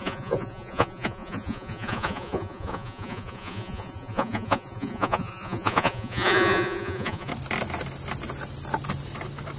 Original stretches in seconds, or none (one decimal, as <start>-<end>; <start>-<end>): 7.3-9.6